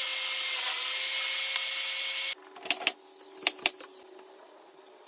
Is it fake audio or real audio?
real